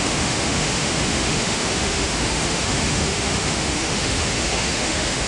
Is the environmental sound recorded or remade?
remade